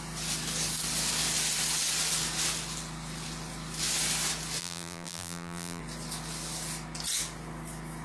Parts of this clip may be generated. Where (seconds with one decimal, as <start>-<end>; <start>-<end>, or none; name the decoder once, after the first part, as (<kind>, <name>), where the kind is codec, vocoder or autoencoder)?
4.6-5.8 (vocoder, BigVGAN v2)